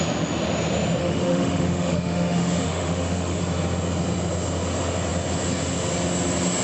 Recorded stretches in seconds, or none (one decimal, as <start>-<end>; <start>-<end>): 0.0-1.0; 3.4-6.6